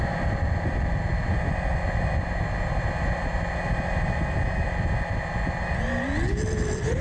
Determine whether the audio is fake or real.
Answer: real